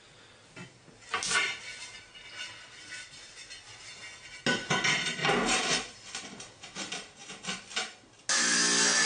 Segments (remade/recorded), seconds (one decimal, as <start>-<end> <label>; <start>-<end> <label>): 0.0-9.1 recorded